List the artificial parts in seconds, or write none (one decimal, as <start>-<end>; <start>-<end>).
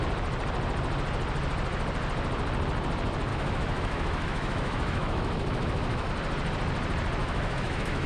3.3-6.1; 7.2-8.1